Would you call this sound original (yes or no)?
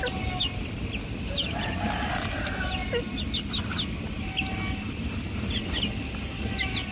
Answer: yes